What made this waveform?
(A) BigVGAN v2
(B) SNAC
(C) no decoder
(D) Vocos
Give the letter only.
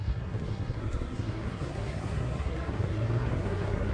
B